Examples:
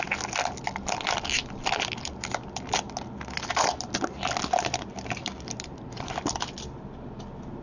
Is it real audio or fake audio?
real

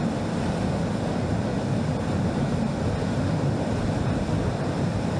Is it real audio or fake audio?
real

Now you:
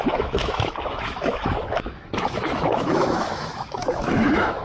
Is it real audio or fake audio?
fake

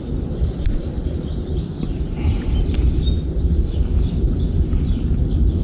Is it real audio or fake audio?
real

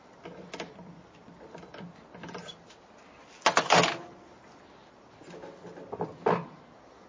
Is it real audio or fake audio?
real